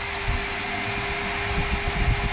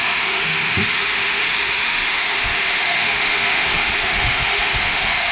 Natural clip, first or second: first